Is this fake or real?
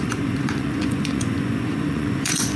fake